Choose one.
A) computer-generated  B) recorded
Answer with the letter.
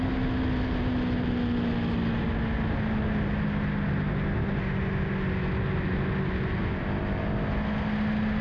B